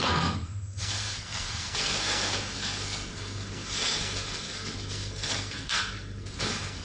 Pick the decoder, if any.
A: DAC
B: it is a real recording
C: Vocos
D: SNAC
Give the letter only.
D